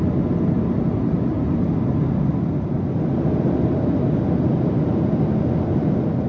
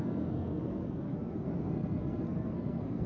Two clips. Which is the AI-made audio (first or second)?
second